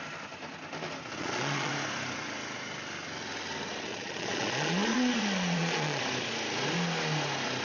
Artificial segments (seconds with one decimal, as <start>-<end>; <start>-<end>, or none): 1.2-1.7; 3.9-6.0